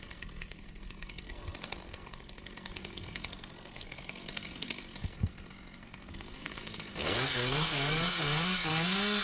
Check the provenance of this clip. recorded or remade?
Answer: remade